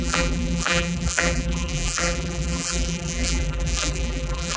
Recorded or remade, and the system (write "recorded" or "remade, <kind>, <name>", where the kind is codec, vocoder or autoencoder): remade, vocoder, BigVGAN v2